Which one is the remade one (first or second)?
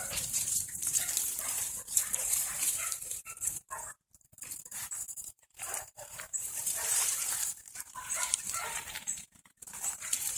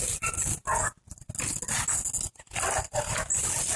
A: first